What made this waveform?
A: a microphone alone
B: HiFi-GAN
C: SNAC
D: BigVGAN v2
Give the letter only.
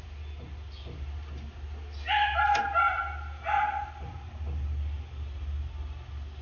A